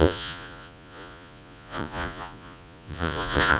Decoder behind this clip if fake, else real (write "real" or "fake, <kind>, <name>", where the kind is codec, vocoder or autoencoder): fake, vocoder, Vocos